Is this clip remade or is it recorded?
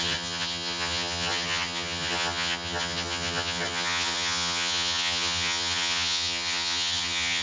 remade